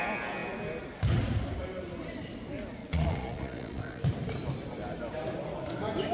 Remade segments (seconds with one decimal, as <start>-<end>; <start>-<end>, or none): 2.8-4.0